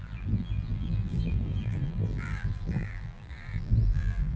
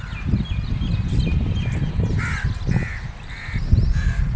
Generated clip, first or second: first